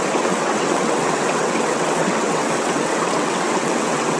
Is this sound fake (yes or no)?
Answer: yes